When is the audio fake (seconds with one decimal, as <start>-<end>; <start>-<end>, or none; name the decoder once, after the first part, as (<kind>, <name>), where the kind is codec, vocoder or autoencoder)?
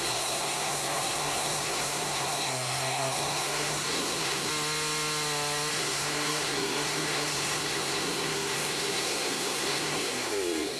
0.0-4.5 (codec, SNAC); 5.7-10.8